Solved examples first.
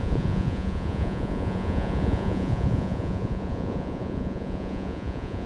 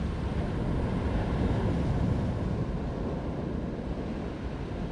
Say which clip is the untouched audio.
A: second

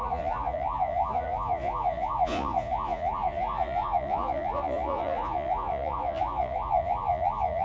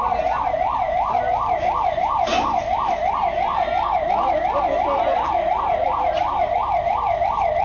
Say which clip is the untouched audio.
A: second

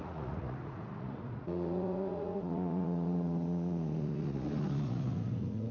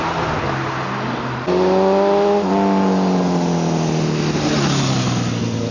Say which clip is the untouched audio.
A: second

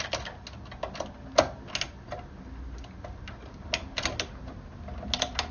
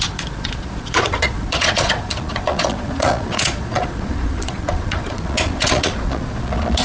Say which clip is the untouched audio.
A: first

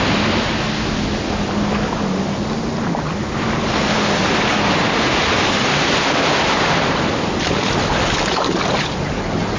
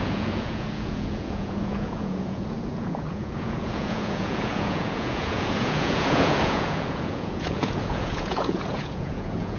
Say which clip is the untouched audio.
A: first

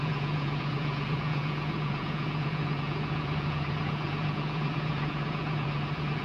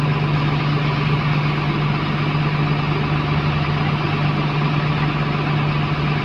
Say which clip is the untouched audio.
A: second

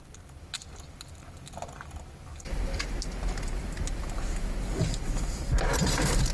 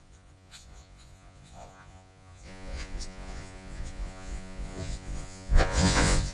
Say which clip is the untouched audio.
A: first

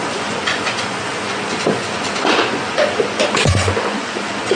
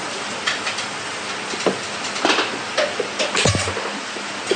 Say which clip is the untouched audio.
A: second